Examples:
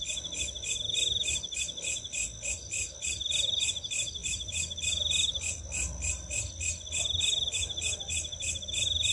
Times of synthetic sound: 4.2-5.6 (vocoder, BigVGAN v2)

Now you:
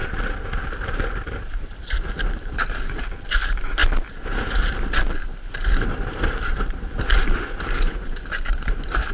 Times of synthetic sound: 0.0-3.3 (vocoder, BigVGAN v2); 3.8-4.5; 5.3-9.1

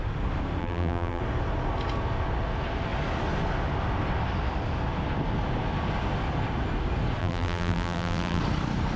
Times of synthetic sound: 0.6-1.2 (vocoder, BigVGAN v2); 7.2-8.4

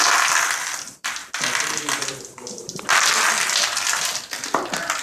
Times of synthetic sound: 1.2-4.2 (vocoder, BigVGAN v2)

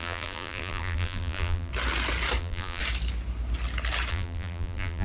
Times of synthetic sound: 0.0-1.7 (vocoder, BigVGAN v2); 2.4-2.8; 4.1-5.0

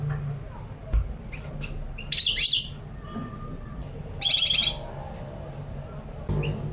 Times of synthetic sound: none

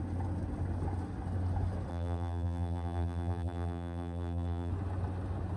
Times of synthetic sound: 1.9-4.7 (vocoder, BigVGAN v2)

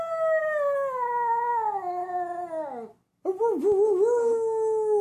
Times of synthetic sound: none